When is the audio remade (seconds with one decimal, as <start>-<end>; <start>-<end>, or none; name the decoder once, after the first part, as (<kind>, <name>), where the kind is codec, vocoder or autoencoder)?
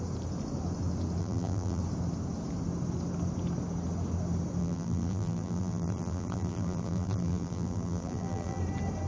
1.2-1.8 (vocoder, BigVGAN v2); 4.6-8.6